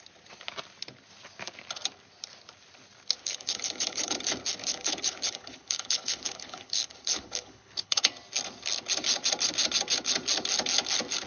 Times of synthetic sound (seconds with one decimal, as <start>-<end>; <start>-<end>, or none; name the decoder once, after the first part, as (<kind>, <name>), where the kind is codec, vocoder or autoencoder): 3.2-4.1 (codec, HILCodec); 4.6-8.0